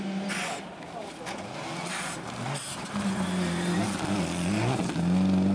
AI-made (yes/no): no